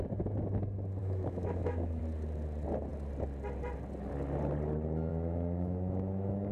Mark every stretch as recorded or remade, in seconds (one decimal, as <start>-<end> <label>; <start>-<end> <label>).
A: 0.0-1.0 recorded; 1.0-2.0 remade; 2.0-5.1 recorded; 5.1-6.5 remade